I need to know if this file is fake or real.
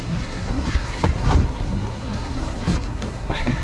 fake